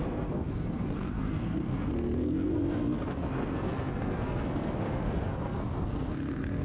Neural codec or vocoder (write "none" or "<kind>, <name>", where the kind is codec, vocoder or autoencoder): codec, SNAC